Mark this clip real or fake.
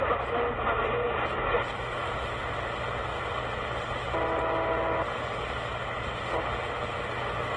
real